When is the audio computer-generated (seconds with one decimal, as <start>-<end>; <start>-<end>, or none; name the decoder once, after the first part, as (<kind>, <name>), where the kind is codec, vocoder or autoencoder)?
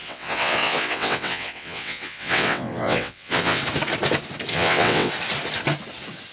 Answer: 0.0-3.6 (vocoder, WaveNeXt); 4.5-5.1